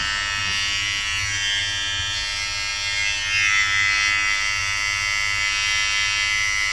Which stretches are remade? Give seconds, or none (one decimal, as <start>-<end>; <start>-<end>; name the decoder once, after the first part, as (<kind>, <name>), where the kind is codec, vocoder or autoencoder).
none

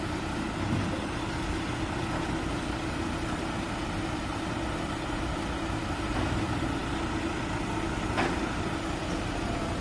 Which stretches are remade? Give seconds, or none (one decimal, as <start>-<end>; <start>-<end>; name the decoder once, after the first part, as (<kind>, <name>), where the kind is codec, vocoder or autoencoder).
none